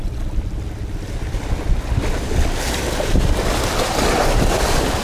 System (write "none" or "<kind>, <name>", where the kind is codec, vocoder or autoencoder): none